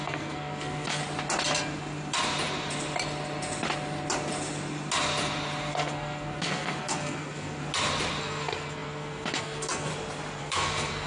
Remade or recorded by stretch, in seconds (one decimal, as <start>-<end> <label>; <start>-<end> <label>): 0.0-1.0 remade; 1.0-5.7 recorded; 5.7-7.6 remade; 7.6-8.2 recorded; 8.2-9.9 remade; 9.9-10.4 recorded; 10.4-11.1 remade